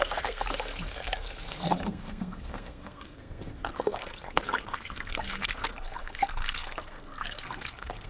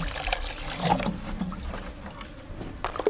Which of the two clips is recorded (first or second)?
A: second